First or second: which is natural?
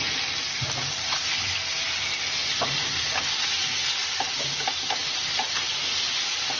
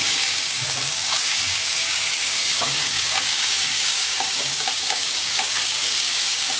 first